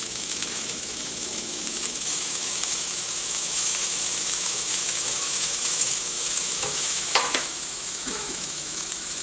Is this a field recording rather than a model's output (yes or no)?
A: no